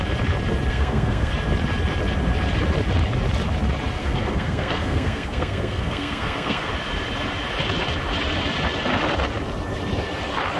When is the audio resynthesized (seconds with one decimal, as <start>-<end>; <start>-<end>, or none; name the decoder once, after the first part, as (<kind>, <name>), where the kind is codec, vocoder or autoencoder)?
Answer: 0.7-1.3 (codec, SNAC); 4.0-6.7